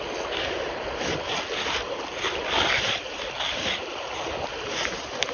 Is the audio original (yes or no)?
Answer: yes